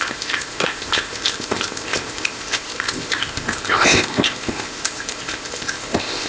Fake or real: fake